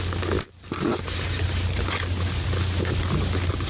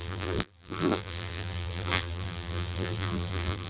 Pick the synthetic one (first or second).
second